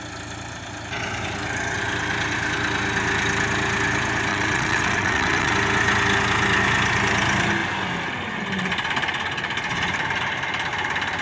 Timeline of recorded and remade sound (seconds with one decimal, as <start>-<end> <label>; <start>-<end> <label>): 0.0-4.3 recorded; 4.3-5.5 remade; 5.5-11.2 recorded